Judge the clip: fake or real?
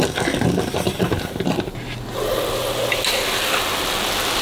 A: real